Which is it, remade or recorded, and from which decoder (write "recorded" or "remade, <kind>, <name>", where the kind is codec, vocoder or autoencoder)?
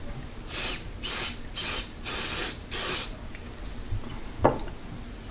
recorded